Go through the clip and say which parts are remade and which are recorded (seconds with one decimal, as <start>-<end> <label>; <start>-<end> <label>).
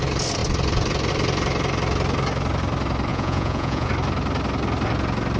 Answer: 0.0-3.1 recorded; 3.1-3.9 remade; 3.9-5.4 recorded